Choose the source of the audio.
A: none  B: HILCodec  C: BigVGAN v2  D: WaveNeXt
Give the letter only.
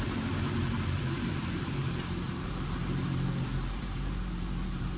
C